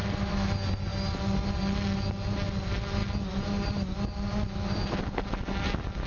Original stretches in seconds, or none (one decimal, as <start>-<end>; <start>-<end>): 0.5-6.1